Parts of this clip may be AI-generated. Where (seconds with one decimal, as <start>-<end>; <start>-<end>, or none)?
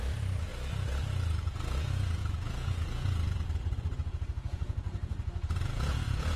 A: 0.0-0.5; 1.8-6.4